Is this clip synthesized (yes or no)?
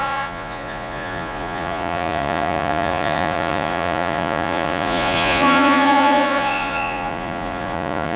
yes